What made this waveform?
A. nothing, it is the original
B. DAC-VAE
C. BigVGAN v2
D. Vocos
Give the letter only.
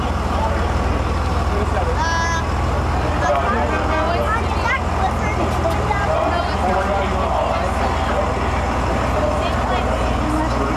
A